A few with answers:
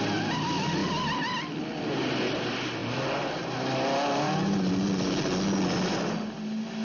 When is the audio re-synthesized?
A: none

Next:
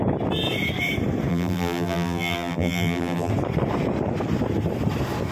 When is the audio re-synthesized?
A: 1.3-3.3 (vocoder, BigVGAN v2)

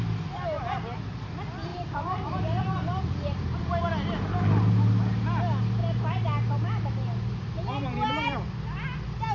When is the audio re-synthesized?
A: 1.7-3.8 (vocoder, BigVGAN v2); 5.8-8.5